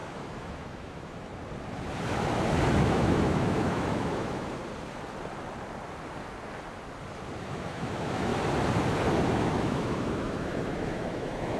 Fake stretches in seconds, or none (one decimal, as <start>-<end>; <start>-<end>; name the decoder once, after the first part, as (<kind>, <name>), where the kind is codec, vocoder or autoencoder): 0.0-1.3 (autoencoder, DAC-VAE); 2.7-4.6; 7.4-8.3; 9.3-11.6